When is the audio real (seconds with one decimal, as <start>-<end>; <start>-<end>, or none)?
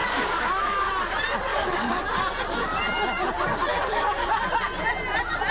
0.9-1.5; 2.0-3.7; 4.4-5.5